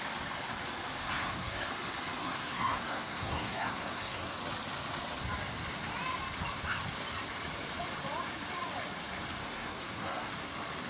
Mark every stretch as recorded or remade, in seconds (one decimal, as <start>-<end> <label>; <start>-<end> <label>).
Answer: 0.0-1.0 recorded; 1.0-1.7 remade; 1.7-2.2 recorded; 2.2-4.4 remade; 4.4-9.4 recorded; 9.4-10.3 remade; 10.3-10.9 recorded